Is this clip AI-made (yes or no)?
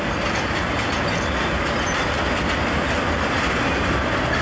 no